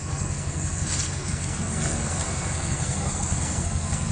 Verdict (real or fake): fake